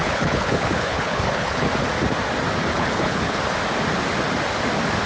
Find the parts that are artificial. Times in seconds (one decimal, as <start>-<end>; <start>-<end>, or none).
0.0-1.7; 2.7-3.4